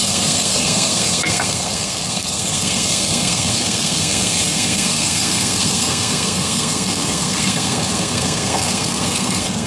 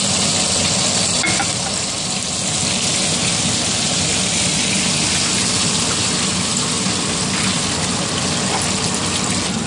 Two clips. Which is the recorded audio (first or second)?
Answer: second